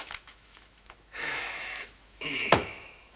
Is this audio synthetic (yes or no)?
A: yes